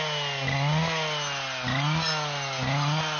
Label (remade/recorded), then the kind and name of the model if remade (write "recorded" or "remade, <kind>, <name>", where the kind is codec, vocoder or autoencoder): recorded